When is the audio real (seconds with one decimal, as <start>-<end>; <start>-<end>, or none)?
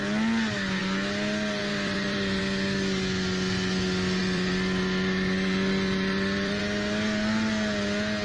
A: 0.0-1.6; 2.4-4.2; 6.6-8.2